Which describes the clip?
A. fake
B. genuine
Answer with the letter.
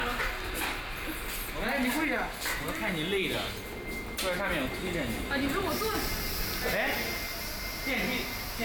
B